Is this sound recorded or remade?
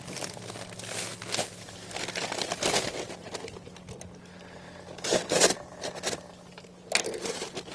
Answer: recorded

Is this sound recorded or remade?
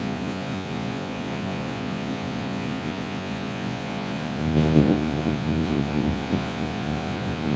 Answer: remade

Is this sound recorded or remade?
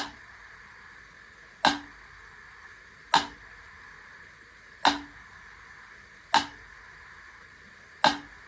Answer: recorded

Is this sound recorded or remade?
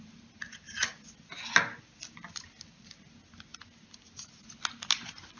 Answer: recorded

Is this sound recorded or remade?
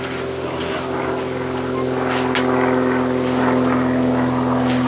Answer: recorded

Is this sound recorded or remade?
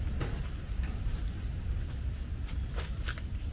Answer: recorded